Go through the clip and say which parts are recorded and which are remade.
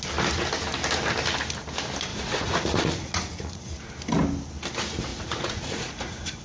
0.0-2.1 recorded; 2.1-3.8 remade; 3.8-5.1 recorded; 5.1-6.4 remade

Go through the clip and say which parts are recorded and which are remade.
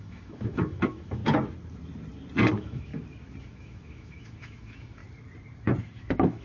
0.0-1.2 remade; 1.2-2.5 recorded; 2.5-2.9 remade; 2.9-3.4 recorded; 3.4-5.0 remade; 5.0-5.8 recorded; 5.8-6.4 remade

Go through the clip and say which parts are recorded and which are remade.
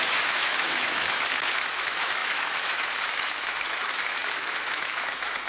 0.0-5.5 remade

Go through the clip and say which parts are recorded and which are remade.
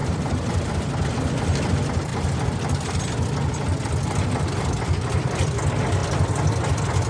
0.0-7.1 recorded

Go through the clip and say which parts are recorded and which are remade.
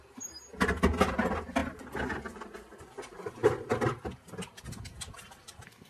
0.0-5.9 recorded